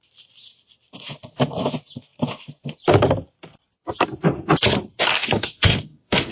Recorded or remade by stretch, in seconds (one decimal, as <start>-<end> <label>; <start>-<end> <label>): 0.0-5.2 recorded; 5.2-6.3 remade